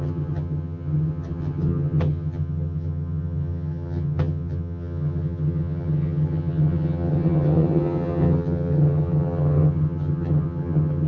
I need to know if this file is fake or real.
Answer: fake